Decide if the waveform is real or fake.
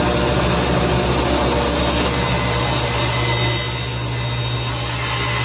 real